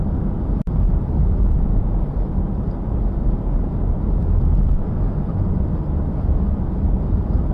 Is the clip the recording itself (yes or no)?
yes